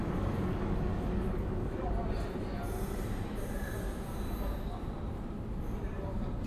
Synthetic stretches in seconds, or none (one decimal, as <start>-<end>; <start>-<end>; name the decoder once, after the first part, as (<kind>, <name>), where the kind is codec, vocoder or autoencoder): 0.0-1.9 (codec, DAC)